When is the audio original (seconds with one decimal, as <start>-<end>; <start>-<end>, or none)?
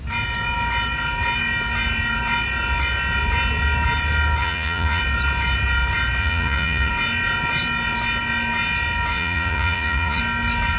0.0-4.4; 5.0-6.2; 6.9-9.1; 10.2-10.8